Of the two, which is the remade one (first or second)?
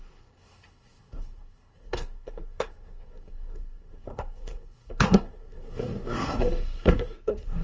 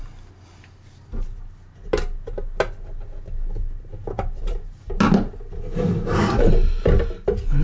first